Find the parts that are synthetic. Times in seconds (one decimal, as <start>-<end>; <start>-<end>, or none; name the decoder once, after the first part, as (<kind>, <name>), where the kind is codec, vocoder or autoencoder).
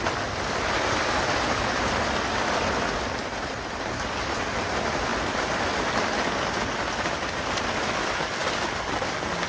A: none